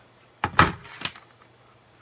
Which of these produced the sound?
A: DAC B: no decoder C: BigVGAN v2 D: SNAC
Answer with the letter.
B